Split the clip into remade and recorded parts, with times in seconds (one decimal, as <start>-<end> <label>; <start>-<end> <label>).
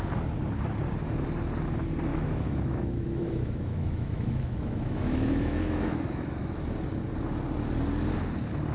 0.0-2.1 recorded; 2.1-6.6 remade; 6.6-8.7 recorded